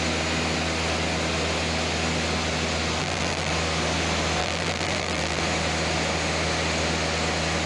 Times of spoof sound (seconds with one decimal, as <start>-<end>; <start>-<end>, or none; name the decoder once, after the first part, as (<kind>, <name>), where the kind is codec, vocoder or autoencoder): 3.0-3.5 (vocoder, BigVGAN v2); 4.4-5.4